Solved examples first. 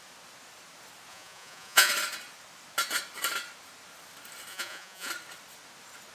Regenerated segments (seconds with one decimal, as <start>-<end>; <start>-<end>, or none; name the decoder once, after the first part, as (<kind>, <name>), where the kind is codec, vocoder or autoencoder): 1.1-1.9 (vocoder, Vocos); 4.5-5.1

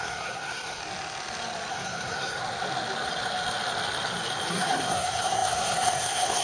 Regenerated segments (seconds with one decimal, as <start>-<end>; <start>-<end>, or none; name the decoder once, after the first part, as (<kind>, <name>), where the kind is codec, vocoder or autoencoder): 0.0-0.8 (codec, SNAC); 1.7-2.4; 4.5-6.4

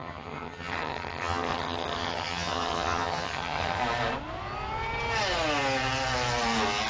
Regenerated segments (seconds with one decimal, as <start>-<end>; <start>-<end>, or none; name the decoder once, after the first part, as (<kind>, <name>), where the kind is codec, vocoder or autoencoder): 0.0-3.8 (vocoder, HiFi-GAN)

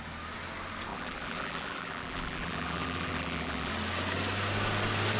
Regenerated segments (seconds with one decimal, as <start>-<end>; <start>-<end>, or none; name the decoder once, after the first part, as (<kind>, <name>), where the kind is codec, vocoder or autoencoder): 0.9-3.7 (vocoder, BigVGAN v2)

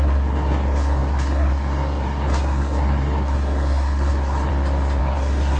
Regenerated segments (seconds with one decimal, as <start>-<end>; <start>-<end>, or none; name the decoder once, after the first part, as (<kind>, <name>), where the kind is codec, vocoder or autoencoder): 0.0-4.5 (codec, SNAC); 5.0-5.6

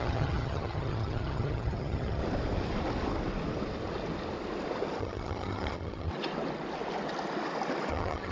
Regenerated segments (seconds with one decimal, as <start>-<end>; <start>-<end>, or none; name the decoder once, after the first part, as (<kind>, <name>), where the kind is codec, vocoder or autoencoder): 0.0-2.2 (vocoder, HiFi-GAN); 5.0-6.1; 7.9-8.3

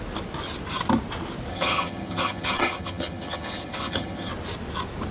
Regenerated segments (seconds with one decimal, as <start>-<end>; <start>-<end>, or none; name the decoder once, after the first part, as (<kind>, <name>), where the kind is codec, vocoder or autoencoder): 1.5-4.3 (vocoder, HiFi-GAN)

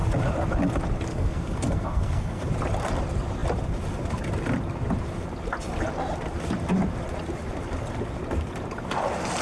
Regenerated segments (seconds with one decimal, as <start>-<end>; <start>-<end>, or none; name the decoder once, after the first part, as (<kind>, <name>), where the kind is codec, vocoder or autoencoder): 1.1-2.5 (codec, SNAC)